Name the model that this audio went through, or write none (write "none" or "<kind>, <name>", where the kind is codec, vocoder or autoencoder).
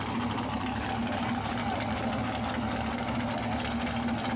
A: none